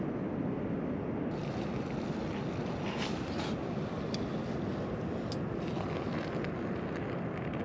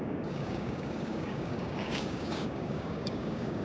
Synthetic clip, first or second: second